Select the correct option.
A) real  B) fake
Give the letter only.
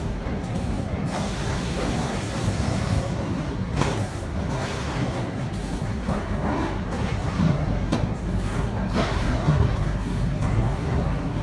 B